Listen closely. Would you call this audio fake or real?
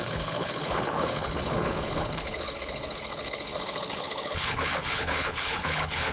fake